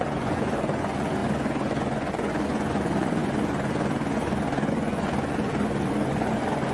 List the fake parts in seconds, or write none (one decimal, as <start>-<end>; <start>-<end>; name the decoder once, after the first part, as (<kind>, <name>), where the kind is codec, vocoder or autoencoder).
0.0-6.7 (vocoder, Vocos)